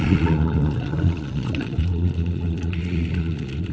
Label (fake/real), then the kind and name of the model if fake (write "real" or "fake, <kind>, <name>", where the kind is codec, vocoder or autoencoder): fake, vocoder, Vocos